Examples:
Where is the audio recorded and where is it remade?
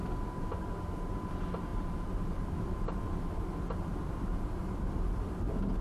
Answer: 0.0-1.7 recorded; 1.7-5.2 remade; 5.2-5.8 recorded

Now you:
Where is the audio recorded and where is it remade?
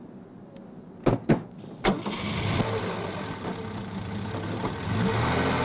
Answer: 0.0-5.6 recorded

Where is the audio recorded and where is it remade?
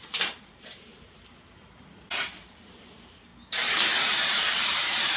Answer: 0.0-0.9 remade; 0.9-2.4 recorded; 2.4-3.3 remade; 3.3-4.0 recorded; 4.0-5.2 remade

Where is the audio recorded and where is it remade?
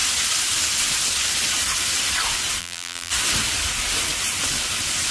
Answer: 0.0-2.6 recorded; 2.6-3.1 remade; 3.1-5.1 recorded